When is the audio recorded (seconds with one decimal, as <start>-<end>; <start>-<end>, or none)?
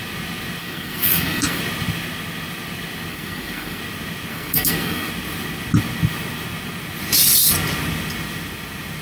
0.0-0.6; 1.6-3.1; 3.8-4.3; 5.1-9.0